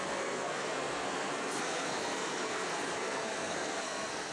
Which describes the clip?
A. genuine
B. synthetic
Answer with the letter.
B